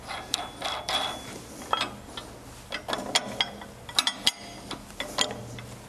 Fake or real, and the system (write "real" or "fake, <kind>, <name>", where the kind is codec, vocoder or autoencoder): real